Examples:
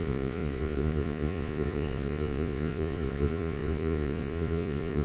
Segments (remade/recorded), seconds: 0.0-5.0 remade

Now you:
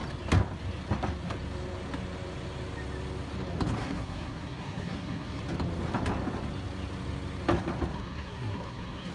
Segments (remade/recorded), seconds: 0.0-3.8 recorded; 3.8-5.4 remade; 5.4-7.9 recorded; 7.9-9.1 remade

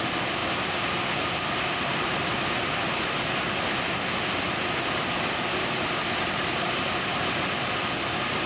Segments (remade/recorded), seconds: 0.0-8.5 recorded

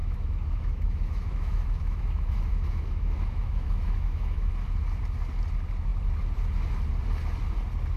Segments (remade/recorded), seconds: 0.0-4.5 remade; 4.5-8.0 recorded

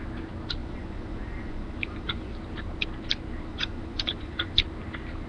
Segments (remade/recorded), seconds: 0.0-0.6 recorded; 0.6-2.3 remade; 2.3-3.5 recorded; 3.5-4.5 remade; 4.5-5.3 recorded

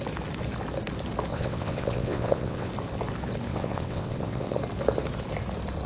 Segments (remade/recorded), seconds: 0.0-1.3 recorded; 1.3-2.7 remade; 2.7-3.5 recorded; 3.5-4.6 remade; 4.6-5.9 recorded